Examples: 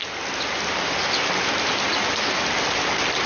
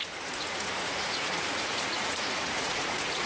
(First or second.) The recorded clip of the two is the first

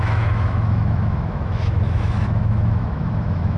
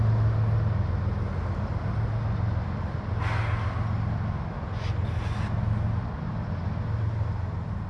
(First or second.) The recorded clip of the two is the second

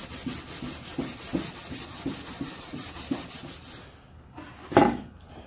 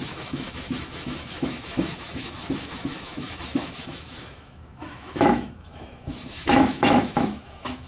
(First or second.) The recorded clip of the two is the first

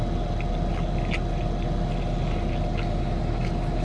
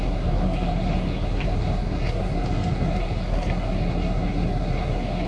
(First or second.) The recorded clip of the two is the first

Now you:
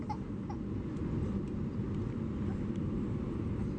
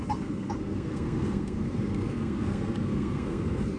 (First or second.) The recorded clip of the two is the first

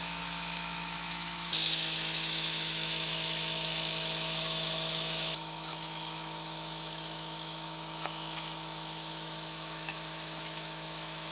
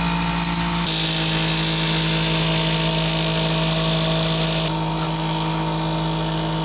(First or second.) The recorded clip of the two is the second